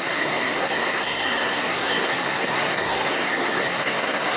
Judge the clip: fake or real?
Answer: fake